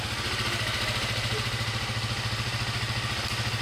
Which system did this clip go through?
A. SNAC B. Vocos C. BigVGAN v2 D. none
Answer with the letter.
D